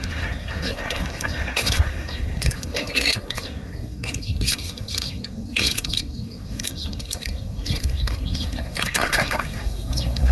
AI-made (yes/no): yes